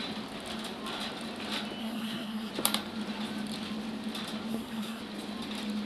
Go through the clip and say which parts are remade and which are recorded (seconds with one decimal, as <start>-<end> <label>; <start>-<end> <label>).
0.0-1.8 recorded; 1.8-2.5 remade; 2.5-4.5 recorded; 4.5-5.0 remade; 5.0-5.9 recorded